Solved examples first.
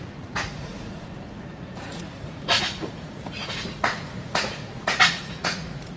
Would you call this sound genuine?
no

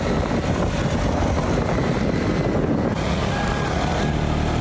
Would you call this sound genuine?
yes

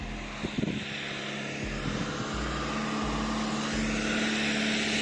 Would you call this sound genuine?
yes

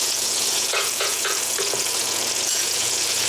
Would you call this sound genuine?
no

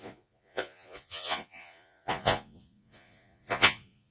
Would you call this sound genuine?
no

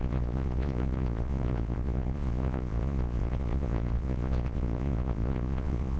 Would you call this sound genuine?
no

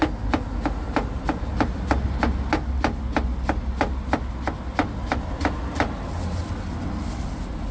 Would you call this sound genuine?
yes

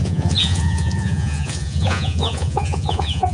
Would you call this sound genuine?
no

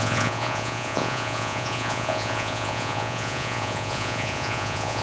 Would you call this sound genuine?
no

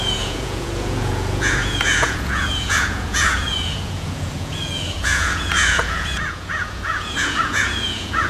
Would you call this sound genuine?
no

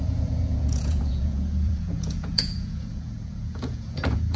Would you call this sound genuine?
no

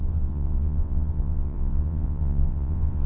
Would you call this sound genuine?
no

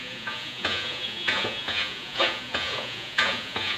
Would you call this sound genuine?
no